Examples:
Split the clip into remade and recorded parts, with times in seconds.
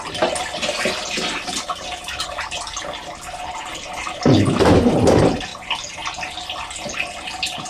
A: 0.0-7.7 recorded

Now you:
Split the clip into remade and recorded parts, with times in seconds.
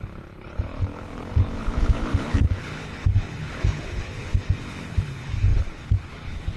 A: 0.0-6.6 remade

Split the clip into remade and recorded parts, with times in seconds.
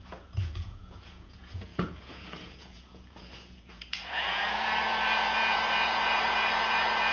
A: 0.0-7.1 remade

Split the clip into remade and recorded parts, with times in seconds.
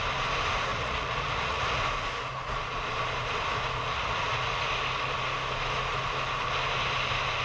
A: 0.0-0.7 recorded; 0.7-1.8 remade; 1.8-3.9 recorded; 3.9-4.7 remade; 4.7-7.4 recorded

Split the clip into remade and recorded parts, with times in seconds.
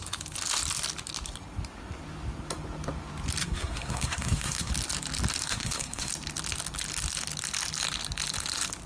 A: 0.0-3.4 recorded; 3.4-4.7 remade; 4.7-5.4 recorded; 5.4-6.1 remade; 6.1-8.9 recorded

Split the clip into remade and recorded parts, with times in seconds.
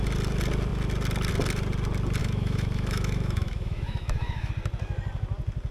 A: 0.0-2.2 recorded; 2.2-4.5 remade; 4.5-5.7 recorded